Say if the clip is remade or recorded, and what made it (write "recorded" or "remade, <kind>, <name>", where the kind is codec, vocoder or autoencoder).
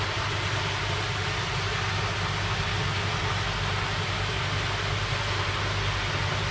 recorded